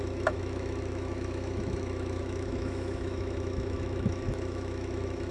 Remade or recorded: remade